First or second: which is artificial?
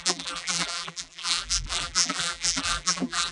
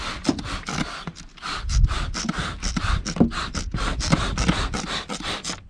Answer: first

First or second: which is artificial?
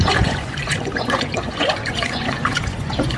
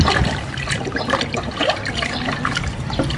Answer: first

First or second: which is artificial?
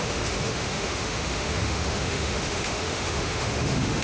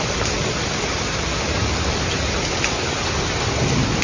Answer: first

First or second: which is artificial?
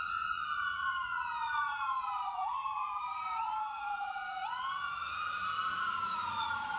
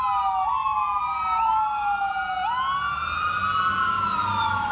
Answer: first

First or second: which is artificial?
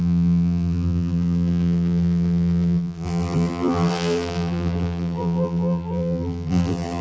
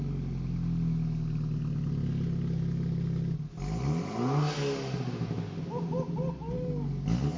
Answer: first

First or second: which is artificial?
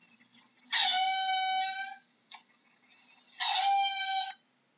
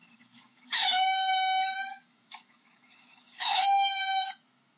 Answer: second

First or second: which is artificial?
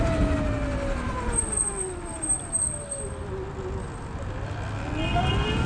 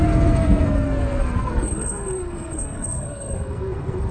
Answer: second